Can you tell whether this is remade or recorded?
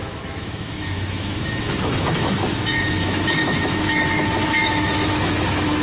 remade